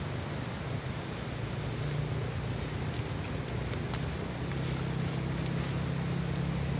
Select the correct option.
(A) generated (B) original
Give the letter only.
B